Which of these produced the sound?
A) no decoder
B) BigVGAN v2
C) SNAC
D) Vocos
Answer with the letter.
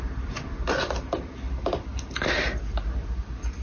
A